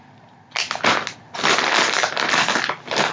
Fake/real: real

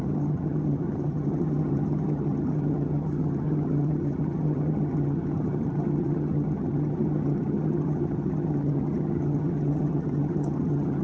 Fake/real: fake